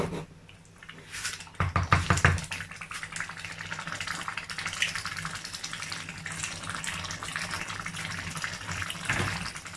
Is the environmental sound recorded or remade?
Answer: recorded